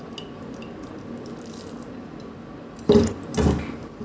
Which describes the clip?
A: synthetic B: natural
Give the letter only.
B